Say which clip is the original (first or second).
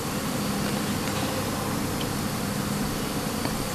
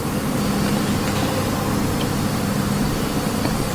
second